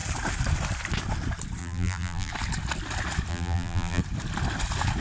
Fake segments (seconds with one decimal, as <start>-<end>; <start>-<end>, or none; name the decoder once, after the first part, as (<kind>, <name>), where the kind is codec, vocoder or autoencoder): 1.6-2.3 (vocoder, BigVGAN v2); 3.3-4.0